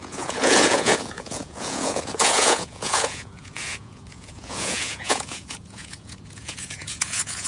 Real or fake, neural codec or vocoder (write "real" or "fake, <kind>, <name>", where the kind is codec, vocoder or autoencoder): fake, vocoder, Vocos